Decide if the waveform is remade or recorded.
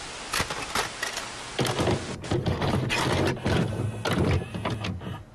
recorded